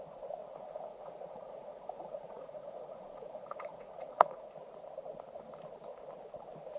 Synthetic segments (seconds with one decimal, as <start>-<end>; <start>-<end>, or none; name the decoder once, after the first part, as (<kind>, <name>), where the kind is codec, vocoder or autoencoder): 0.4-4.5 (vocoder, Vocos)